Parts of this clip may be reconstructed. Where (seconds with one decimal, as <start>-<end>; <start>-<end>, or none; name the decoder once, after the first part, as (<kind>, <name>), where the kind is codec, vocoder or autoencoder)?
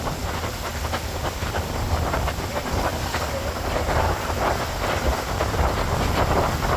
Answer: none